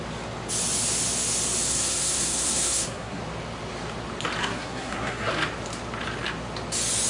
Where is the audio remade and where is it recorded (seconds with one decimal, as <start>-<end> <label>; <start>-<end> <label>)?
0.0-1.6 recorded; 1.6-3.2 remade; 3.2-4.4 recorded; 4.4-5.3 remade; 5.3-7.1 recorded